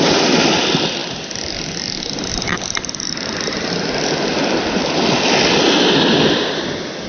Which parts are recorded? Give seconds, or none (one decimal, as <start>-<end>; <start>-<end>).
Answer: 0.0-7.1

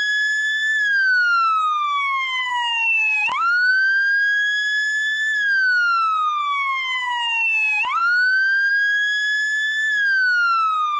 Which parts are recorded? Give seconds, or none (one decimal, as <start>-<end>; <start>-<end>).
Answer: 0.0-0.7; 3.7-11.0

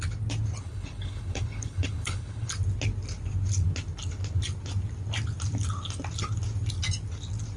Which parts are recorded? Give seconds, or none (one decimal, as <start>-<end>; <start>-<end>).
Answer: 0.0-0.6; 2.5-7.6

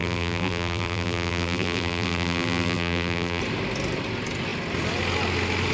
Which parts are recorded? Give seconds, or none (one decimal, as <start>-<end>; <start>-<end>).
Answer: 3.4-5.7

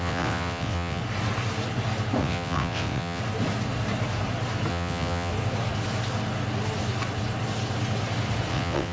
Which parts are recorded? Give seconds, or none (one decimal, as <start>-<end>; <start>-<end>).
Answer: 1.0-2.2; 3.2-4.7; 5.3-8.5